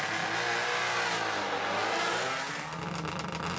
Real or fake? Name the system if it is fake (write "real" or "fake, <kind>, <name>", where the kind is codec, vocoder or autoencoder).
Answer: real